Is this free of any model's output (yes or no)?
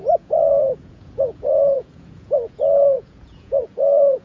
no